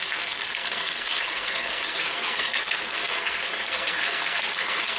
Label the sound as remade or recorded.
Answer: remade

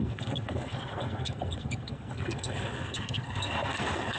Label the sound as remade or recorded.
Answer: remade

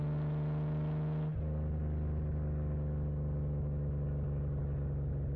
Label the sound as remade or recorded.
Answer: recorded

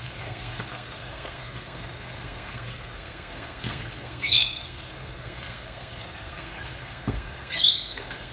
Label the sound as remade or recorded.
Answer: remade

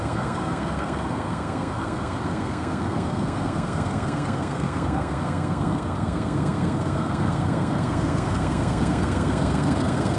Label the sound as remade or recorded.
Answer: remade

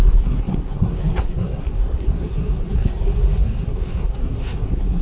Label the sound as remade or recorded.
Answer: remade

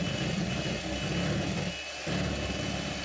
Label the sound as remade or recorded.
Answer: recorded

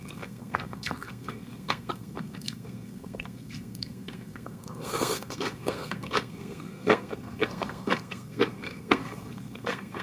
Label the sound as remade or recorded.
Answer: remade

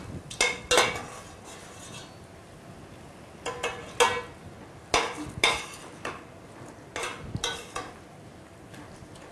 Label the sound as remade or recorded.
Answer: recorded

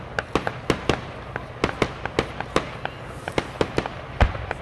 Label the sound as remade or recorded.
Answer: recorded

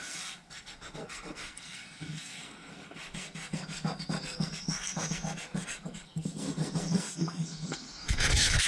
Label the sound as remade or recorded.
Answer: remade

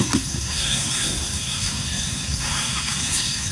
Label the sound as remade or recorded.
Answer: remade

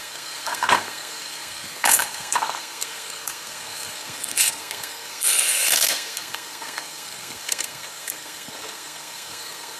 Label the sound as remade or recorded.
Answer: remade